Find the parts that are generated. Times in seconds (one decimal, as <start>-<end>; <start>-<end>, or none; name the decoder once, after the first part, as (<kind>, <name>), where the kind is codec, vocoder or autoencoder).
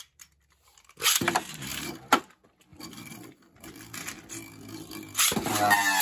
1.7-2.2 (vocoder, BigVGAN v2); 2.7-5.2